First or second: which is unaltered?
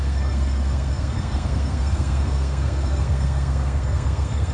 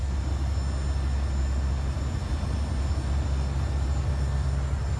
second